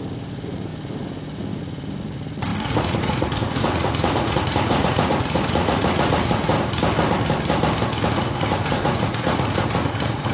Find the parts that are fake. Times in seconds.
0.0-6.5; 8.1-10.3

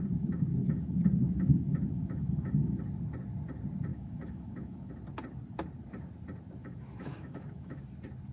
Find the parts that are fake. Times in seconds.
0.6-2.8; 3.9-4.9; 6.6-7.8

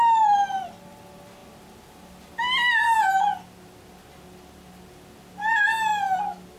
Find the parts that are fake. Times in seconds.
none

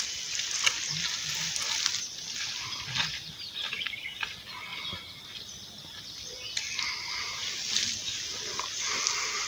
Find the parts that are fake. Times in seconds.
none

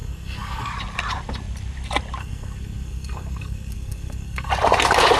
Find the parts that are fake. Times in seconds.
0.0-0.7; 2.2-4.5

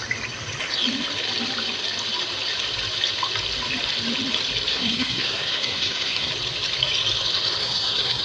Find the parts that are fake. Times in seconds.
4.7-6.3; 7.6-8.2